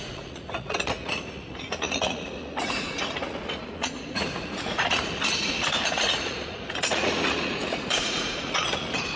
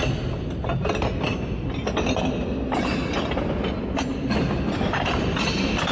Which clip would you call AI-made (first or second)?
first